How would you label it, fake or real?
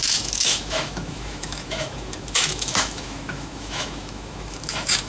fake